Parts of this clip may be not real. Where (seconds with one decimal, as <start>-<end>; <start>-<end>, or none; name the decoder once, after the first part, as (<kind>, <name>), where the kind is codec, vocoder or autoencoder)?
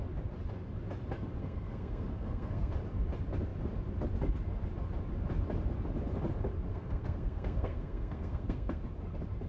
1.4-2.7 (codec, SNAC); 6.7-8.8